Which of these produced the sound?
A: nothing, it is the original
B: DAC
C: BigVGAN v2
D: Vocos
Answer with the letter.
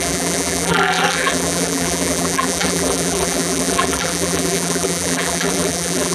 C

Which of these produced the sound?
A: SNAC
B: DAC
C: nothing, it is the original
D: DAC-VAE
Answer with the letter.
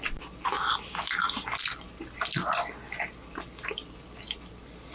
C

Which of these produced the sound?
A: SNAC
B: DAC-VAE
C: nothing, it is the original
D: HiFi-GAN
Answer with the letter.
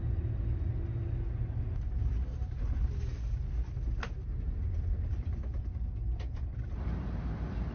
C